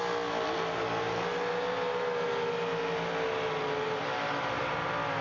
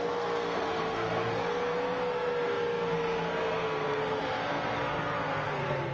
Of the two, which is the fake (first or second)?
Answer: second